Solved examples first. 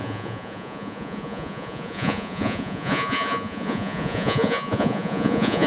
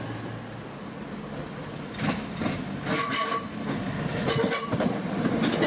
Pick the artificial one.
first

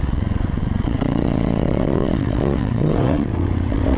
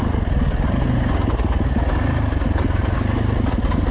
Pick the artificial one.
first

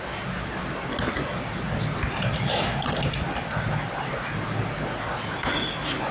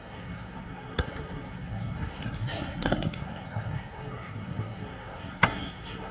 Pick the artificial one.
second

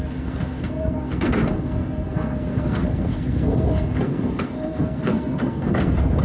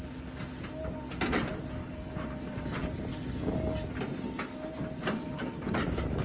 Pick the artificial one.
first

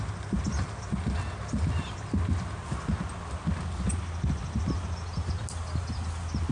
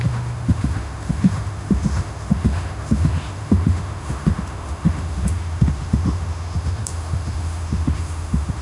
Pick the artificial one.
second